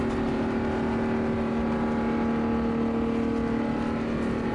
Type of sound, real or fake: real